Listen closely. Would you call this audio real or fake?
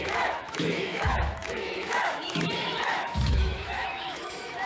fake